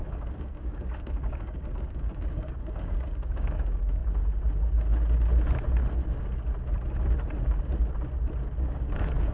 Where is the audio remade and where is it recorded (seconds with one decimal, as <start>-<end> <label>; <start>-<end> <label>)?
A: 0.0-4.0 remade; 4.0-8.6 recorded; 8.6-9.3 remade